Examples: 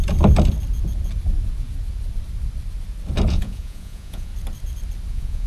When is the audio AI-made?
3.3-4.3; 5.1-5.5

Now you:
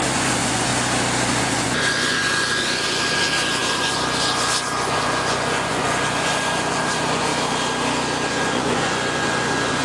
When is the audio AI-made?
0.0-0.7; 1.3-7.3; 8.3-9.8

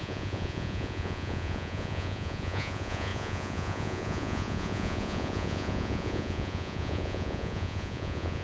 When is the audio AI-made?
0.0-8.4

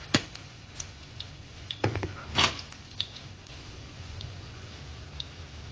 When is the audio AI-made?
0.0-2.3; 2.8-4.7